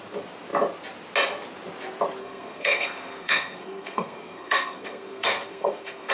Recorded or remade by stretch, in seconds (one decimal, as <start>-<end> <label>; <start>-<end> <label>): 0.0-2.2 recorded; 2.2-6.1 remade